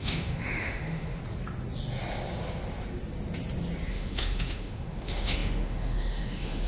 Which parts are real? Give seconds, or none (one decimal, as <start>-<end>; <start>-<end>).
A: 1.2-3.9